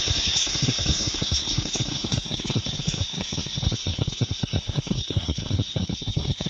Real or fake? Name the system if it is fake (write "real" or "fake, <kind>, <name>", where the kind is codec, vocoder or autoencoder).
fake, codec, SNAC